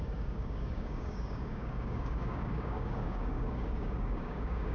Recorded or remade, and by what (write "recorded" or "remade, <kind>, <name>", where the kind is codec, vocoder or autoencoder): remade, codec, DAC